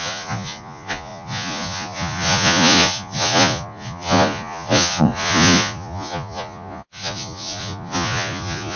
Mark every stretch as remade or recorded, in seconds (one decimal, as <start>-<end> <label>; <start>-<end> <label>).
0.0-8.8 remade